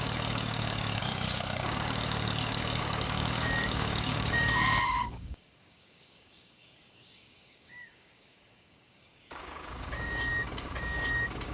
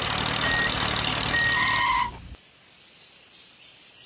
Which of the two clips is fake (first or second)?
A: first